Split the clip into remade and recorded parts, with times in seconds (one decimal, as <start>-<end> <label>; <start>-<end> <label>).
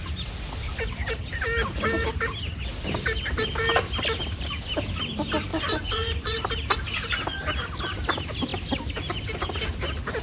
0.0-5.5 recorded; 5.5-6.4 remade; 6.4-10.2 recorded